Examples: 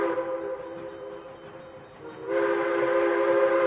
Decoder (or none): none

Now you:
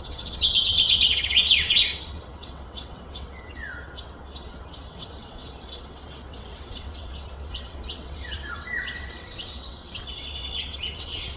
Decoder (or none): vocoder, WaveNeXt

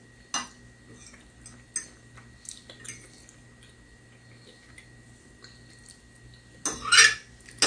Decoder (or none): none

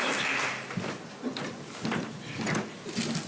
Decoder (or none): none